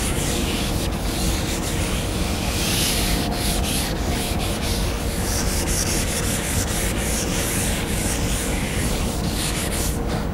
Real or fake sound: fake